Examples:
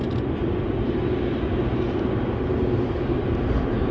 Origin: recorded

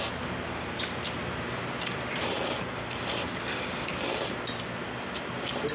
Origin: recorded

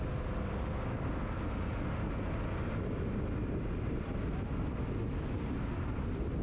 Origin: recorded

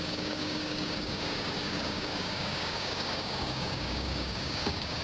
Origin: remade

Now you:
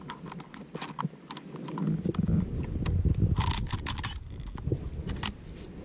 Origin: recorded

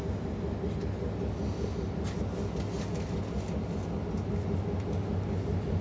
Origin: recorded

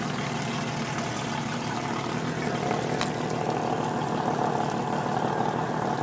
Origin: recorded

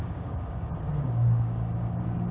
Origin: remade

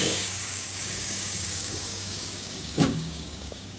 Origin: remade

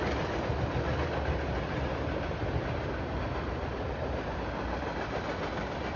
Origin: recorded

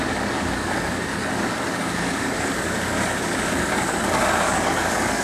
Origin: remade